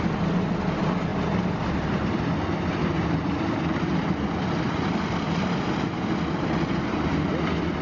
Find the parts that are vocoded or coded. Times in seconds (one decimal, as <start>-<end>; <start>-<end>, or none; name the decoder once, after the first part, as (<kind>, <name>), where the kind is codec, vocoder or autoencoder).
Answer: none